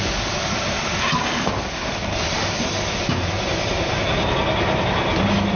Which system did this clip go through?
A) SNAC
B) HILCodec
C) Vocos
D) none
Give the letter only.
D